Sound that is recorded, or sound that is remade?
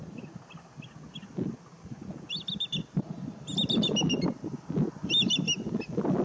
recorded